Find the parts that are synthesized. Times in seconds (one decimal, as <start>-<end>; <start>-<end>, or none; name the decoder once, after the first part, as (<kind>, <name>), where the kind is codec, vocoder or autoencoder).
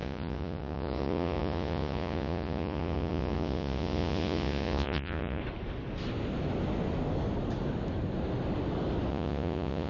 0.0-5.4 (vocoder, Vocos); 9.1-9.9